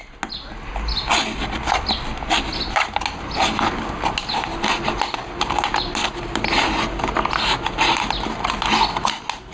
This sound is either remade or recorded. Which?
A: recorded